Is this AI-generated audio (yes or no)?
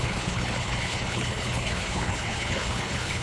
yes